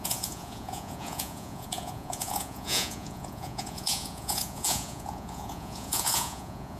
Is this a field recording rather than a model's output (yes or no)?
no